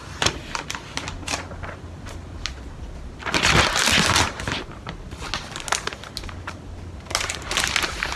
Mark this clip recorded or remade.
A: recorded